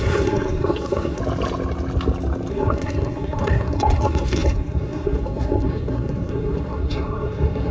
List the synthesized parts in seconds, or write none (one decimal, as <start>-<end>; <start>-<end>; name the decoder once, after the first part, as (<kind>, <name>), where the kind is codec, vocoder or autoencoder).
0.0-1.2 (codec, SNAC); 2.5-7.7